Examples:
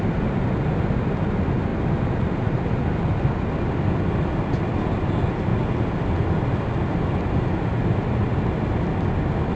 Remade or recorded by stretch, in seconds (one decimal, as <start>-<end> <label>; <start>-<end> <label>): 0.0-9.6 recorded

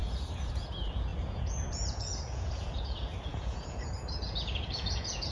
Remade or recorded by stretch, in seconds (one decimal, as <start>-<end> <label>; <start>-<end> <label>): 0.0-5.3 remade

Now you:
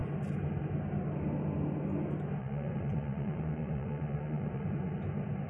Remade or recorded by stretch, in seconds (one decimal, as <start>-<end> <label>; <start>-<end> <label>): 0.0-2.4 recorded; 2.4-5.0 remade; 5.0-5.5 recorded